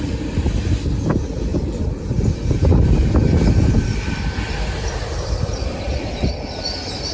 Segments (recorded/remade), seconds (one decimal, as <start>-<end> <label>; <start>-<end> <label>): 0.0-1.5 recorded; 1.5-5.8 remade; 5.8-7.1 recorded